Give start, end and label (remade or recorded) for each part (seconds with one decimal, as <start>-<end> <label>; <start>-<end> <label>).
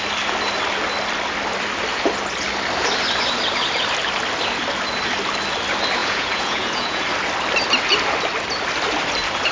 0.0-6.0 recorded; 6.0-7.0 remade; 7.0-9.5 recorded